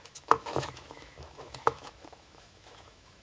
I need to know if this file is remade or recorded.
remade